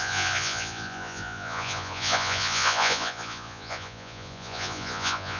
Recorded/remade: remade